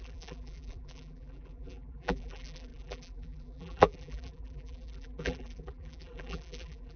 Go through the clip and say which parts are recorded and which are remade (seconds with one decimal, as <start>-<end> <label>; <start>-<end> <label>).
0.0-7.0 remade